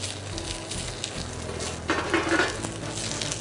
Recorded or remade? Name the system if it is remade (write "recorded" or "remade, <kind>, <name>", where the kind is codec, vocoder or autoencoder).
recorded